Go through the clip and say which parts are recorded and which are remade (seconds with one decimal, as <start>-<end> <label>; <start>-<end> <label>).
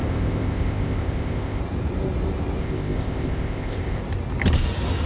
0.0-1.6 remade; 1.6-2.6 recorded; 2.6-4.0 remade; 4.0-5.1 recorded